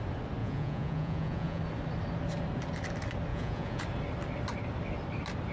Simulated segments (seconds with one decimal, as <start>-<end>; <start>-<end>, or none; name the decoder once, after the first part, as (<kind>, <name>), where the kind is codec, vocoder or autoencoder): 0.4-1.6 (vocoder, Vocos); 3.3-3.8